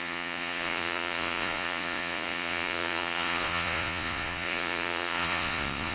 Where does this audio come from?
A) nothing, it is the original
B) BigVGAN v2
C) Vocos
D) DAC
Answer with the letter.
C